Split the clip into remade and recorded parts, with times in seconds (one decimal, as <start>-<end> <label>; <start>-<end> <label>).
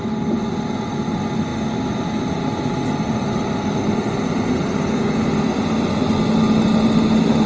0.0-7.5 recorded